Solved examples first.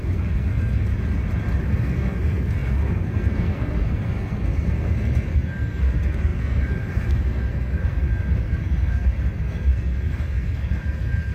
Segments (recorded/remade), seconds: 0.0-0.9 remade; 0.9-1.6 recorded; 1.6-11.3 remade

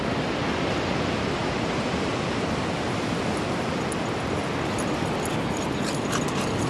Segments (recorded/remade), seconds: 0.0-6.7 recorded